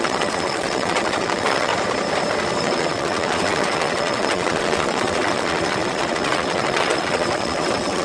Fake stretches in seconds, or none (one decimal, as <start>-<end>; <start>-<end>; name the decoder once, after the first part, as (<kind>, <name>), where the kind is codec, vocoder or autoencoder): 0.0-1.7 (vocoder, WaveNeXt); 2.6-8.0